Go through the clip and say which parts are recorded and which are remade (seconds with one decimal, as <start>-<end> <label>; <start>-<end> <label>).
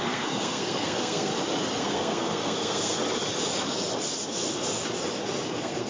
0.0-1.3 remade; 1.3-1.8 recorded; 1.8-3.0 remade; 3.0-5.5 recorded; 5.5-5.9 remade